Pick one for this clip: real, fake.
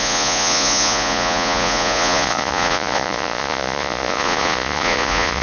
fake